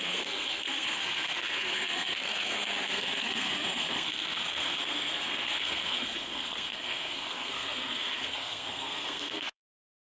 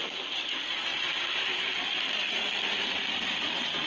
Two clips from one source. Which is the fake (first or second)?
first